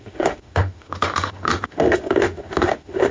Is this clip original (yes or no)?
no